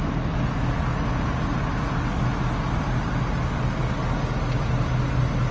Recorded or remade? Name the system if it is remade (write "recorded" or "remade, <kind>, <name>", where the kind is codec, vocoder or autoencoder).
recorded